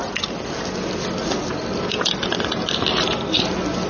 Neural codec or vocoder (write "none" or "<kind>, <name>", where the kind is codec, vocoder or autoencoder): none